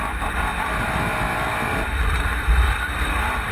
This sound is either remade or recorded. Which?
remade